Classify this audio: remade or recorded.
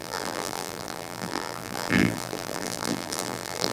remade